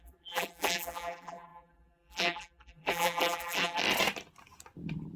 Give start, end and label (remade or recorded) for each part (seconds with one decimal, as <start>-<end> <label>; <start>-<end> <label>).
0.0-3.8 remade; 3.8-5.2 recorded